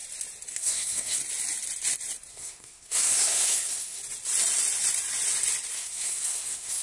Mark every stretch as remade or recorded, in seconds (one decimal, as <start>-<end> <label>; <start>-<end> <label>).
0.0-0.5 recorded; 0.5-1.2 remade; 1.2-2.3 recorded; 2.3-4.0 remade; 4.0-5.7 recorded; 5.7-6.8 remade